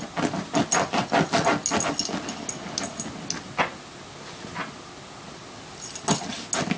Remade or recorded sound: recorded